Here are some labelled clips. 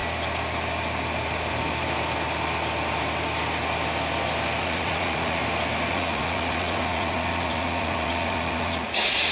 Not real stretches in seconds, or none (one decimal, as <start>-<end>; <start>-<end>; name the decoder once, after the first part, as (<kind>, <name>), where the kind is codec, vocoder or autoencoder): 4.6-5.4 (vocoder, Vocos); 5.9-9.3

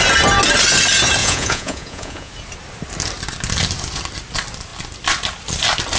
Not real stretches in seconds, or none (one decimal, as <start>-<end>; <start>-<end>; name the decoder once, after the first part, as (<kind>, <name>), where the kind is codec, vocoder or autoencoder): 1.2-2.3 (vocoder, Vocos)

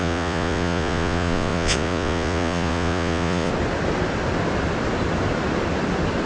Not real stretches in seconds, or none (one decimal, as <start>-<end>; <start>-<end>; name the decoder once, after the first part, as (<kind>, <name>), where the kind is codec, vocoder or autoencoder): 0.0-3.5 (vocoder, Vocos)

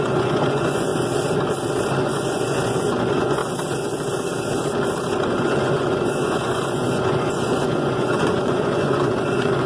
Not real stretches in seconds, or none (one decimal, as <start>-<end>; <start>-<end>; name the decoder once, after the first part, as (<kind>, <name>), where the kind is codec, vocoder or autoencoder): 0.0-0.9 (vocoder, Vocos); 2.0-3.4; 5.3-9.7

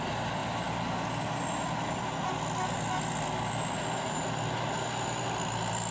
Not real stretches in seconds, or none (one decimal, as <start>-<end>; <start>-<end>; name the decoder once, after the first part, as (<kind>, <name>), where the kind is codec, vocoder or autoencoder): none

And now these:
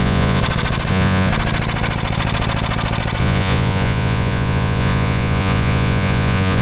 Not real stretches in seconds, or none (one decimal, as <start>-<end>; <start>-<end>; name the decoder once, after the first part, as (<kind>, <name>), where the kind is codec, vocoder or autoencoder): 0.0-0.4 (vocoder, Vocos); 0.9-1.3; 3.2-6.6

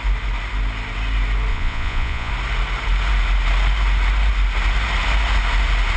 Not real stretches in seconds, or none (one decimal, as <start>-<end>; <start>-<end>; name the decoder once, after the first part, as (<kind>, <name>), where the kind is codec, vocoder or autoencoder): 1.5-2.3 (vocoder, Vocos)

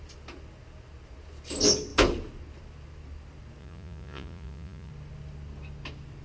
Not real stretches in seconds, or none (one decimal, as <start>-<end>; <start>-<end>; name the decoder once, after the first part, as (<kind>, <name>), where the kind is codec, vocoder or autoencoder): 3.6-4.9 (vocoder, Vocos)